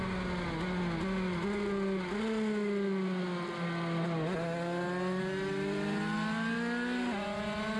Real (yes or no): yes